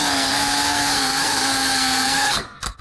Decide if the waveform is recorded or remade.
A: remade